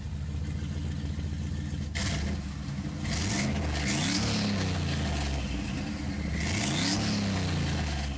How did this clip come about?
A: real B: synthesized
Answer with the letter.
A